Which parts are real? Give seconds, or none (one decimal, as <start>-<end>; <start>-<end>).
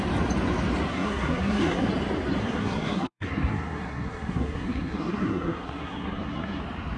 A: 0.0-0.9; 1.9-2.4; 6.6-7.0